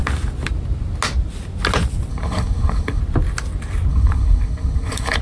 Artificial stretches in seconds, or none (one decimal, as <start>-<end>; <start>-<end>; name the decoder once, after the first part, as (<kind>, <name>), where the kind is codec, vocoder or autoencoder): 2.1-3.0 (codec, HILCodec); 3.9-5.2